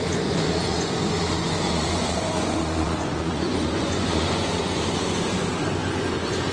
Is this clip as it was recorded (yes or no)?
no